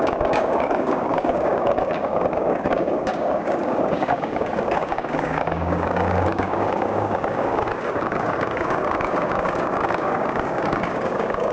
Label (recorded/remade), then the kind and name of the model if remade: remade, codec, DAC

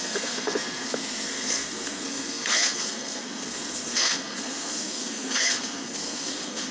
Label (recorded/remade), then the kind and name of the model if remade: remade, codec, SNAC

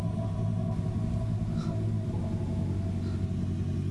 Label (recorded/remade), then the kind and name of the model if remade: recorded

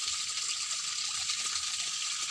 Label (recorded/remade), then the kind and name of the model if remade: recorded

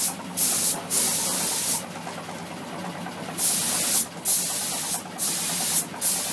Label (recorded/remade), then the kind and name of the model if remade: recorded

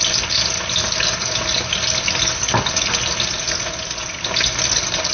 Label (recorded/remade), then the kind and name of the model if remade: recorded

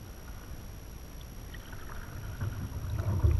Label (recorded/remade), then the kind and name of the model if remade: recorded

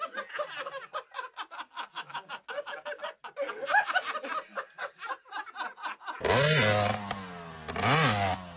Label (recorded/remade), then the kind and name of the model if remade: recorded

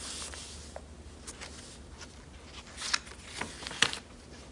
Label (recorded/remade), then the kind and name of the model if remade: recorded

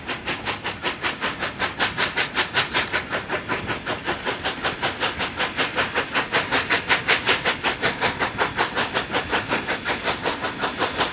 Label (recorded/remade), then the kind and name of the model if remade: recorded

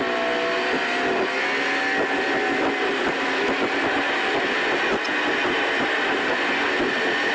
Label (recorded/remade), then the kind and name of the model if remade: recorded